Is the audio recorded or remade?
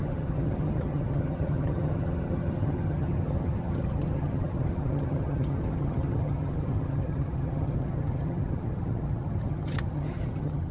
remade